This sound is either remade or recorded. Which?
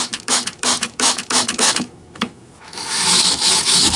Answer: remade